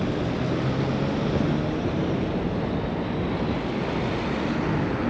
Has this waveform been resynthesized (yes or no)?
no